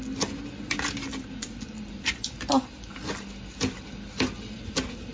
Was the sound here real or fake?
real